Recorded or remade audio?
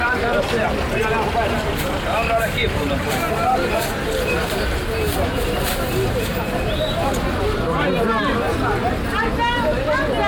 recorded